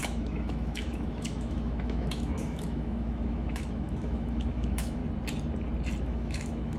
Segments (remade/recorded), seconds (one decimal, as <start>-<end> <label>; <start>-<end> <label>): 0.0-5.0 remade; 5.0-6.0 recorded; 6.0-6.8 remade